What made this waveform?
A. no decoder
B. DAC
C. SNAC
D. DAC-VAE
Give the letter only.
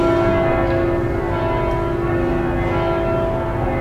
A